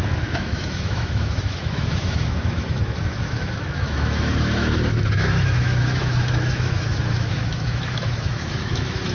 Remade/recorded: remade